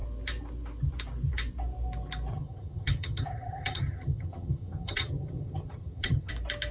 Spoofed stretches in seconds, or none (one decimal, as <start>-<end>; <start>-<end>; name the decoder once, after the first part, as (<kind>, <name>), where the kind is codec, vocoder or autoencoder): 2.3-6.3 (vocoder, HiFi-GAN)